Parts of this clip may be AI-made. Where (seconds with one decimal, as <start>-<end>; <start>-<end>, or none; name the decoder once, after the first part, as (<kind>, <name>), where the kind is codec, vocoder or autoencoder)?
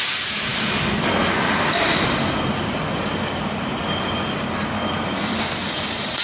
none